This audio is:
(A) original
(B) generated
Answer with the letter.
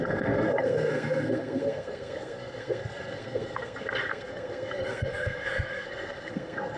B